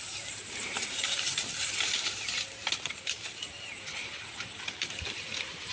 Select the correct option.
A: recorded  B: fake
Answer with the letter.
B